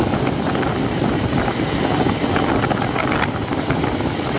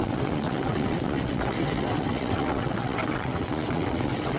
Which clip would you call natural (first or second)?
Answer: first